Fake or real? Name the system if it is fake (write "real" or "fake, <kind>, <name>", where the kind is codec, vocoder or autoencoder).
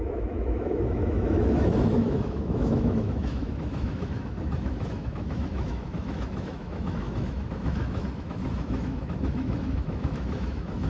fake, autoencoder, DAC-VAE